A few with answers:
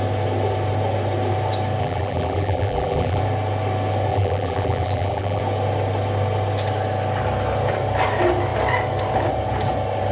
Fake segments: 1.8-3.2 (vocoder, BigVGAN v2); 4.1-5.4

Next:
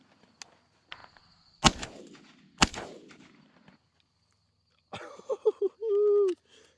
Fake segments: none

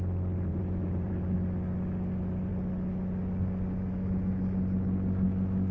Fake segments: 0.5-1.1 (vocoder, BigVGAN v2)

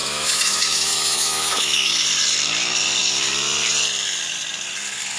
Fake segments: 0.0-1.9 (autoencoder, DAC-VAE)